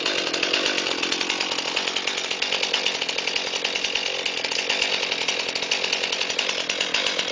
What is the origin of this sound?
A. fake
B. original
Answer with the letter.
B